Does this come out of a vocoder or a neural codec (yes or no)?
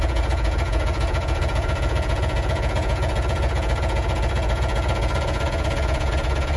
yes